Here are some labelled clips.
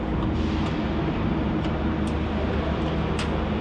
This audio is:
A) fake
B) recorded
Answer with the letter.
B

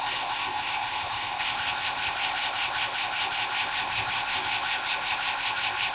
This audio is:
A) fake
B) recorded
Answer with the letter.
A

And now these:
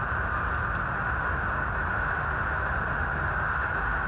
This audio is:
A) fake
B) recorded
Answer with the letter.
B